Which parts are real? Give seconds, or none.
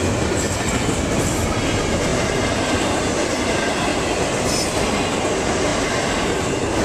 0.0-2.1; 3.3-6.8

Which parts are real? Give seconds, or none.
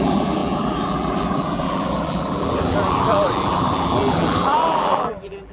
none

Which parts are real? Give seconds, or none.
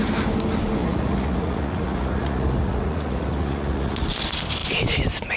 0.0-0.8; 4.0-5.4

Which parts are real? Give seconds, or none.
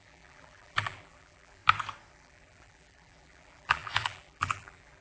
1.6-2.1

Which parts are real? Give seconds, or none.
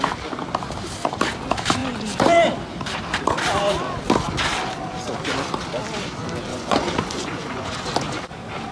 0.0-6.5; 7.7-8.7